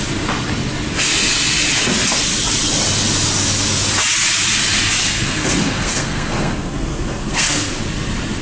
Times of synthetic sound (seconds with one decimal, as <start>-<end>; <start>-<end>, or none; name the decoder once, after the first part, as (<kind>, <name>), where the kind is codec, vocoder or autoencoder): 5.0-7.8 (codec, SNAC)